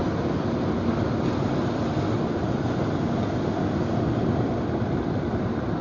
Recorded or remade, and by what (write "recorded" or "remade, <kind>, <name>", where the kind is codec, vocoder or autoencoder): recorded